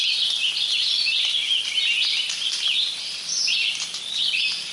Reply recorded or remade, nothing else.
recorded